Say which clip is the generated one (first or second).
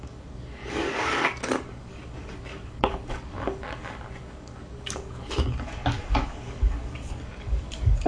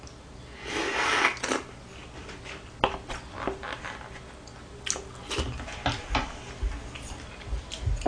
first